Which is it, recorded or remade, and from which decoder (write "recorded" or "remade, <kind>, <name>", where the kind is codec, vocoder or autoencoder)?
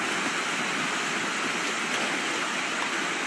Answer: recorded